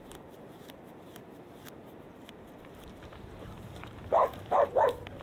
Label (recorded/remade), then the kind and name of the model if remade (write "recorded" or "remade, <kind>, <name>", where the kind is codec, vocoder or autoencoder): remade, vocoder, BigVGAN v2